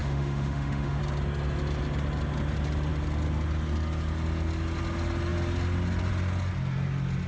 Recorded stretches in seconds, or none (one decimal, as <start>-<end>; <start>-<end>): 1.0-7.3